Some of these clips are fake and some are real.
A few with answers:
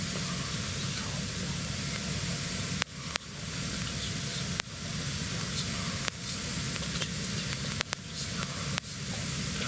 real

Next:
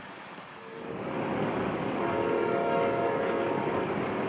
fake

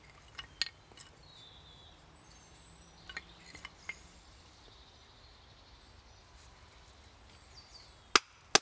real